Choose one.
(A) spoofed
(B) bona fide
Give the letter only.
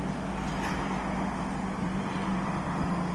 B